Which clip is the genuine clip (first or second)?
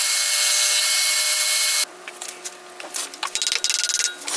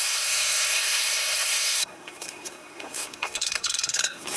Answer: first